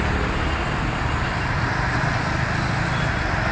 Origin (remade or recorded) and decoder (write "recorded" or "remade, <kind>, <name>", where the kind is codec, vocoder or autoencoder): recorded